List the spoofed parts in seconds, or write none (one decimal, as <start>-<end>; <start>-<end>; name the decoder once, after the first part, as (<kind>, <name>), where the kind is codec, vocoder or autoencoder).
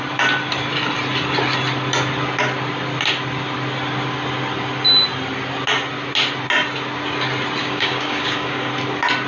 7.6-8.7 (codec, DAC)